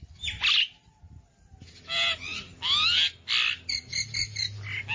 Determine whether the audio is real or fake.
real